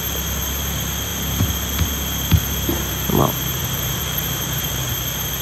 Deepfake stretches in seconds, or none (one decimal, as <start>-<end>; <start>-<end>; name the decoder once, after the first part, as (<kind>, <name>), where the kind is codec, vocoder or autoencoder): 3.6-4.9 (vocoder, BigVGAN v2)